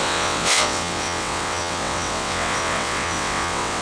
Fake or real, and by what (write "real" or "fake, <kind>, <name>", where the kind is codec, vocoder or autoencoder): fake, vocoder, WaveNeXt